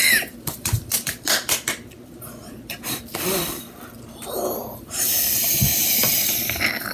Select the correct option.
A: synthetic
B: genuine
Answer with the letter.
A